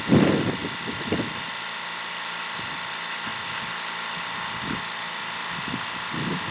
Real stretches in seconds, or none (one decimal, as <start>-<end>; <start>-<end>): 0.0-6.5